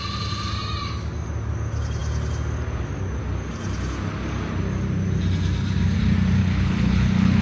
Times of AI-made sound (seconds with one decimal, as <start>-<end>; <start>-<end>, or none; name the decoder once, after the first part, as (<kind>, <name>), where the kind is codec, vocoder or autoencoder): 6.4-7.4 (codec, HILCodec)